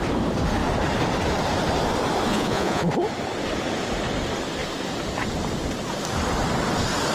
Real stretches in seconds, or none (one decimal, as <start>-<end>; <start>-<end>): 0.0-2.3; 2.9-7.1